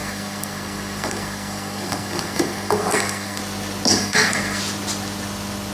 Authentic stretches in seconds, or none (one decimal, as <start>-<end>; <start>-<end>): 3.4-3.9; 4.6-5.7